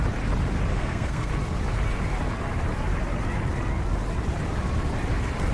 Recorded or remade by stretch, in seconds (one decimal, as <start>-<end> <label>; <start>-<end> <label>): 0.0-0.7 recorded; 0.7-1.3 remade; 1.3-5.5 recorded